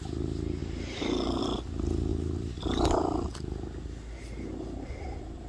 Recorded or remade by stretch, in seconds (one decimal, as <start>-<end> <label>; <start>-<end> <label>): 0.0-5.5 recorded